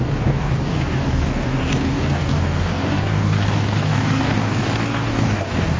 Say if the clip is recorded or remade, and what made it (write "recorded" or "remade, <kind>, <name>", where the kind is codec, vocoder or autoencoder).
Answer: remade, codec, DAC